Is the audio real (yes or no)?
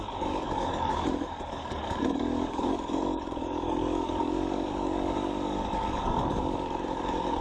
no